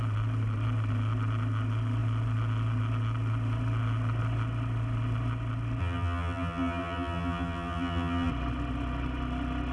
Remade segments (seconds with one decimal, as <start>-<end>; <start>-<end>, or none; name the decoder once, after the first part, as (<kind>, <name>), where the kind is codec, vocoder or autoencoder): 5.8-8.3 (vocoder, BigVGAN v2)